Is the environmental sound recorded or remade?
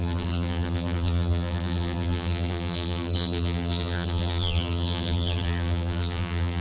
remade